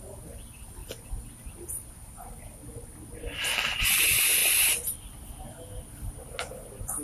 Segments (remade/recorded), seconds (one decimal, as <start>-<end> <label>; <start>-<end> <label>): 0.0-4.4 recorded; 4.4-5.1 remade; 5.1-7.0 recorded